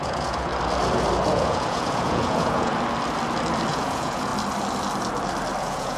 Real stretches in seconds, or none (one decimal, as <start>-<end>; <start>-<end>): 0.5-1.3; 2.7-3.7; 4.3-5.6